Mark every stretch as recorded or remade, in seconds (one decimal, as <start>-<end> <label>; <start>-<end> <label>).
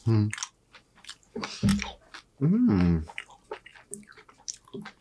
0.0-5.0 recorded